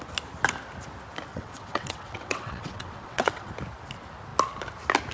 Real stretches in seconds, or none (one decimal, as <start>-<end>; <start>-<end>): 0.0-1.3; 3.5-5.1